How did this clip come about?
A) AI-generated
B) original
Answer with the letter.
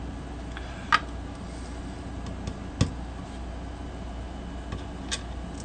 B